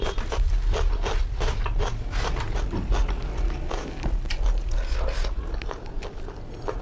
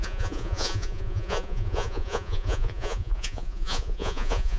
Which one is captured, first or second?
first